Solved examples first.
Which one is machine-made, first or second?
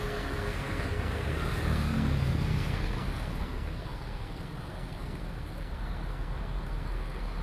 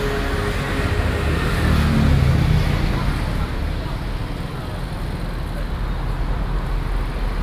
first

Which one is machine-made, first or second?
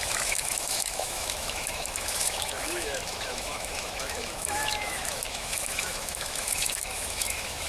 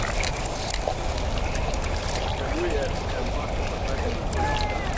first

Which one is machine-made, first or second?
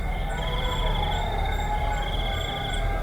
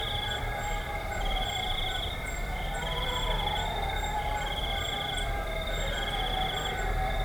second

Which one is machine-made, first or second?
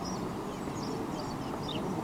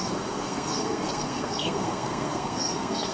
second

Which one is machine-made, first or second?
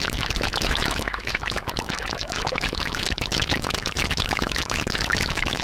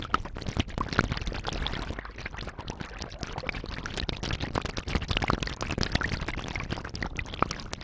first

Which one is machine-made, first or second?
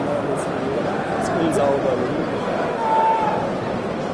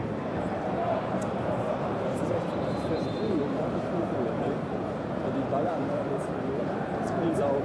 second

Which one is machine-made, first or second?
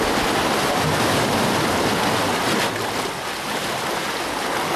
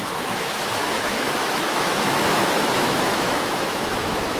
second